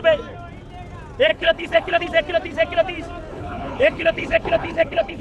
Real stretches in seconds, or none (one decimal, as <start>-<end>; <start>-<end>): 0.0-1.3; 2.0-3.3